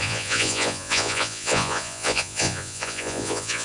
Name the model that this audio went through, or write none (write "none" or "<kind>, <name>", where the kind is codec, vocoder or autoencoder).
vocoder, Vocos